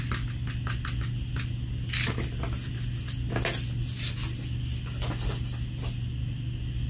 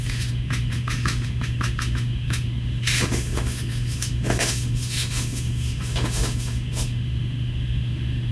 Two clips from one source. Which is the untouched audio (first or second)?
first